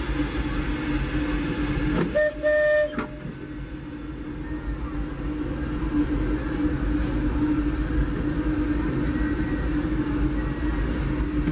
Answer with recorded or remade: recorded